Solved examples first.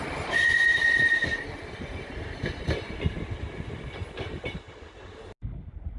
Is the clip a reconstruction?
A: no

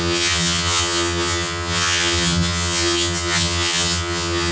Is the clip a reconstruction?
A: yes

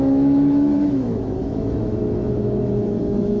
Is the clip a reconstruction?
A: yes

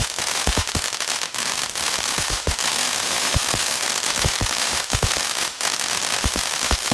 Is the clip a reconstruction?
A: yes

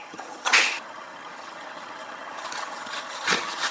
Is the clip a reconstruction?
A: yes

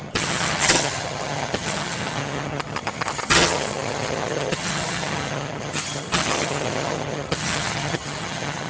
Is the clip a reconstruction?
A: yes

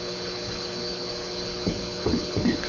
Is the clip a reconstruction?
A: yes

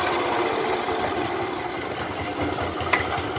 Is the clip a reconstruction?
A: no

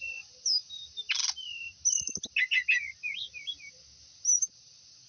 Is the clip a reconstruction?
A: no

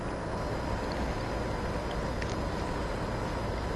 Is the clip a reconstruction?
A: no